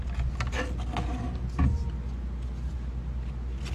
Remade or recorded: recorded